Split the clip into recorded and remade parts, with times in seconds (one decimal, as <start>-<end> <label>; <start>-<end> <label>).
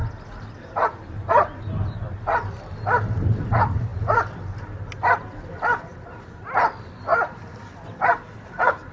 0.0-7.1 recorded; 7.1-7.6 remade; 7.6-8.9 recorded